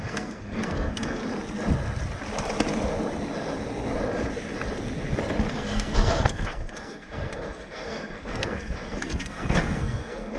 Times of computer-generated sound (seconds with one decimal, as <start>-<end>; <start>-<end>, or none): 0.0-1.2; 5.5-10.4